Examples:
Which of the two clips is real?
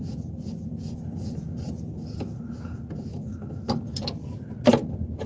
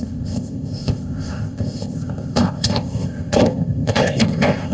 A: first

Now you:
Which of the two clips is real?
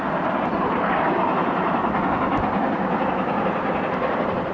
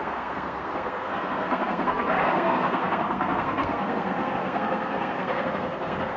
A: first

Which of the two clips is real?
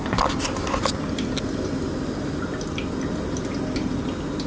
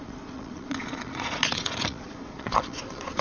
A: first